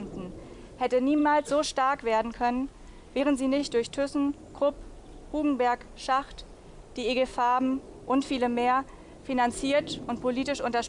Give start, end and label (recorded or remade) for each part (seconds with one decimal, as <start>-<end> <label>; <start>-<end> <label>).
0.0-10.9 recorded